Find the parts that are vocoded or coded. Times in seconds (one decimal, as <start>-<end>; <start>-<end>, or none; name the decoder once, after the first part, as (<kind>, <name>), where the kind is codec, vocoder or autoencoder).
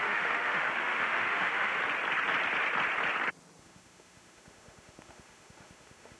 0.0-1.8 (autoencoder, DAC-VAE); 3.6-6.2